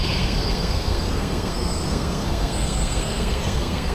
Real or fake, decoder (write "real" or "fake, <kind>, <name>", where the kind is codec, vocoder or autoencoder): fake, codec, SNAC